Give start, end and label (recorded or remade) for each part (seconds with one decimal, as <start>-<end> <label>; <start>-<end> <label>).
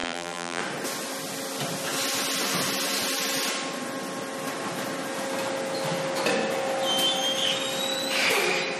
0.0-0.6 remade; 0.6-8.8 recorded